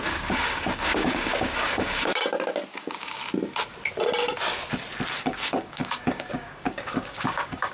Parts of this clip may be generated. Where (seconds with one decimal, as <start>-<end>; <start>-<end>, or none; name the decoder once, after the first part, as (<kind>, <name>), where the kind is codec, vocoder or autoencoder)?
0.0-2.1 (codec, DAC); 2.7-3.2; 5.1-7.7